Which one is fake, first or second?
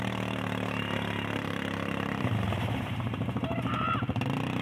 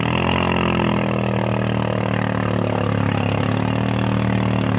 first